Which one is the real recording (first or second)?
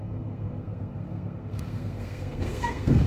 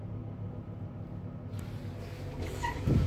second